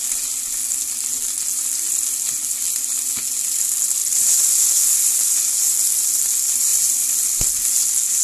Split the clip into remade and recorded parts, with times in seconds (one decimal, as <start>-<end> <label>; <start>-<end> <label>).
0.0-8.2 recorded